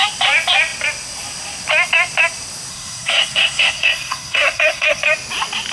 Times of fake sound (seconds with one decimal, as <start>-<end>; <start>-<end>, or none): 2.7-5.0